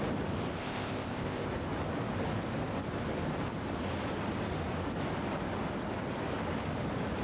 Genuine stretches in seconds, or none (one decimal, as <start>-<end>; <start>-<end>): 0.0-0.6; 1.5-7.2